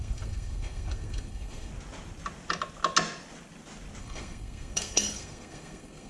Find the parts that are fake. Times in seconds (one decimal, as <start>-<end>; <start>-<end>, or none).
0.0-1.7; 4.0-6.1